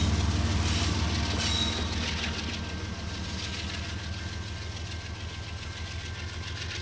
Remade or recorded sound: recorded